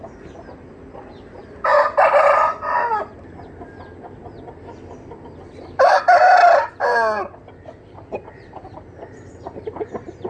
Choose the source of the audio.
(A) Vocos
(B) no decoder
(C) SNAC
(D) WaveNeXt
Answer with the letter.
B